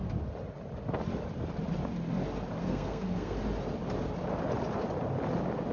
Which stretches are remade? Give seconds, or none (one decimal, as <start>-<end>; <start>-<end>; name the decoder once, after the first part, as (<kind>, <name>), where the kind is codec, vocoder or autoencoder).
2.6-3.4 (codec, SNAC)